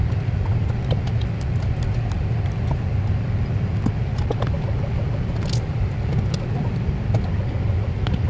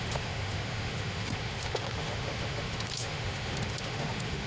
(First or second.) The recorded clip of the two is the first